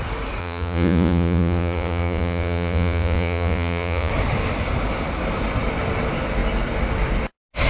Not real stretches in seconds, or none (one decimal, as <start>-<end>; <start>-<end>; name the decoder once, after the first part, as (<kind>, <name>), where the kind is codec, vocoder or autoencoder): 0.4-4.1 (vocoder, Vocos)